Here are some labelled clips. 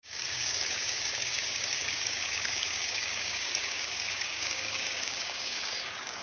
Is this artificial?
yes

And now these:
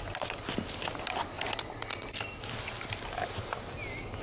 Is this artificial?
no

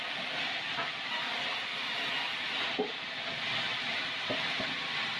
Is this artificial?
yes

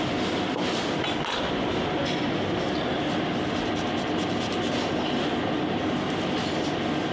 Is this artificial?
no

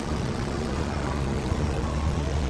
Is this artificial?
yes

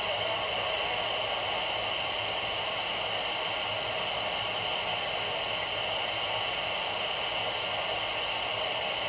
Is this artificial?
no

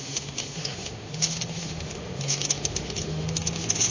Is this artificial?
yes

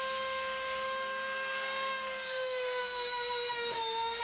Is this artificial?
yes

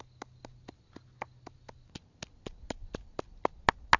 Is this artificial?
no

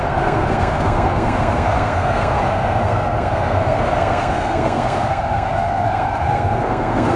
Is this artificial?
yes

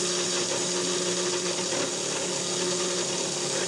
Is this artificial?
no